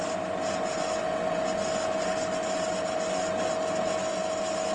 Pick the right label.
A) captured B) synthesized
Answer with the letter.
A